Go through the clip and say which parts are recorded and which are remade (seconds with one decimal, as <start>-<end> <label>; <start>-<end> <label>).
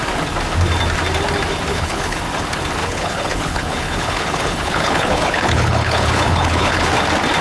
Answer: 0.0-1.7 recorded; 1.7-2.2 remade; 2.2-2.8 recorded; 2.8-6.9 remade; 6.9-7.4 recorded